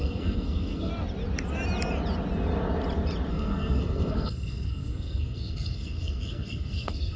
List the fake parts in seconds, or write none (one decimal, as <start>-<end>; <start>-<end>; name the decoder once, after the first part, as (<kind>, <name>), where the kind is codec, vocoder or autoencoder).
0.0-0.9 (codec, SNAC); 3.3-7.2